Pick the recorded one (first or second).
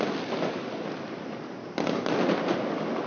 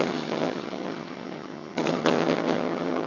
first